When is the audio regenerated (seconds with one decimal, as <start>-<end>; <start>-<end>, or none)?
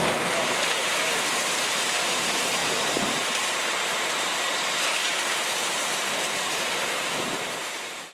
0.0-8.1